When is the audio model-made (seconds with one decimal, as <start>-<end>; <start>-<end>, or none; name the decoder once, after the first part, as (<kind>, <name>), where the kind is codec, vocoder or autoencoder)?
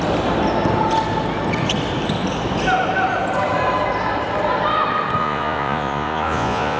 5.2-6.8 (vocoder, Vocos)